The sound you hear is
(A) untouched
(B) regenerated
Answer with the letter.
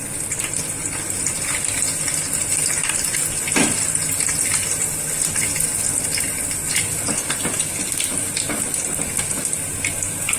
A